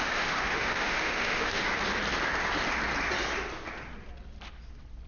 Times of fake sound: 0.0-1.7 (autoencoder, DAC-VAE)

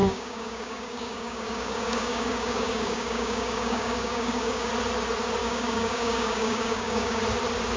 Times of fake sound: 0.0-4.7 (codec, DAC); 5.4-7.2

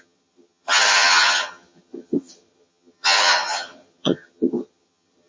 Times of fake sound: 0.0-5.3 (vocoder, HiFi-GAN)

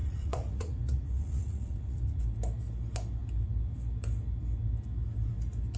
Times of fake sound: 0.0-2.2 (vocoder, Vocos)

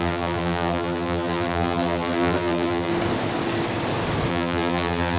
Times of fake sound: 0.0-2.9 (vocoder, BigVGAN v2); 4.3-5.2

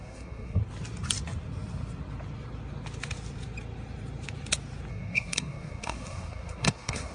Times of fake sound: 0.0-0.6 (codec, SNAC); 4.9-7.1

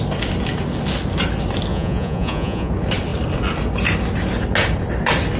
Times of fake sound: 1.7-2.7 (vocoder, Vocos)

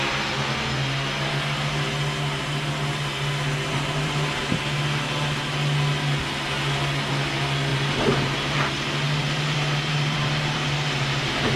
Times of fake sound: 3.7-4.6 (vocoder, BigVGAN v2); 7.7-11.6